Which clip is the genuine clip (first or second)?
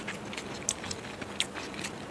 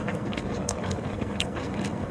first